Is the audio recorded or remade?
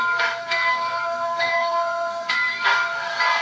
remade